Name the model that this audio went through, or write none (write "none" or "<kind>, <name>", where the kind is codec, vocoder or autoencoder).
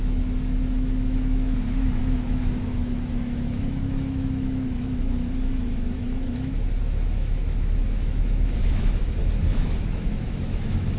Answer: autoencoder, DAC-VAE